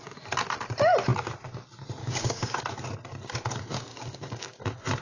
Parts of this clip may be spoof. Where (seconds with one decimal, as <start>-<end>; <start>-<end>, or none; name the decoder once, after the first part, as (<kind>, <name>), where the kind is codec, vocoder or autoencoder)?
2.0-2.6 (codec, DAC); 3.9-4.6